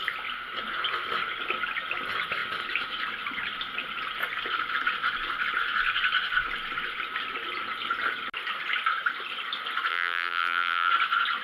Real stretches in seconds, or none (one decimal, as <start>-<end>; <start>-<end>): 0.0-9.9; 10.9-11.4